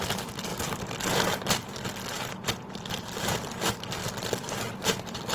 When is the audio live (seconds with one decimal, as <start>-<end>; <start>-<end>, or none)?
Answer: 0.0-5.3